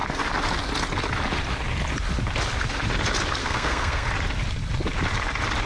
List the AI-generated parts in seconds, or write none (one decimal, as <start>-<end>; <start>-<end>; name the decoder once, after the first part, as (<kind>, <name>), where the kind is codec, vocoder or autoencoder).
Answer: 3.4-4.1 (codec, SNAC)